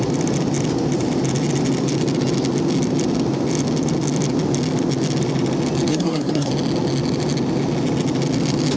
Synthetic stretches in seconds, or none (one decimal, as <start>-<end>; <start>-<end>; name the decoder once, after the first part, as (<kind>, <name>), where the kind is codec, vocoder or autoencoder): 5.9-6.5 (codec, SNAC)